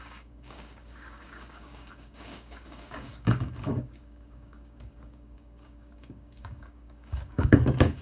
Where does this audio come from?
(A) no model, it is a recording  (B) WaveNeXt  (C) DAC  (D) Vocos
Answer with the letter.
C